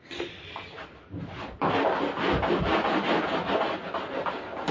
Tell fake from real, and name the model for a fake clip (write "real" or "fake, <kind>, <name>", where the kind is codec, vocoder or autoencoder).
real